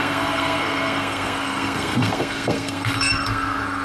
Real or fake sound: fake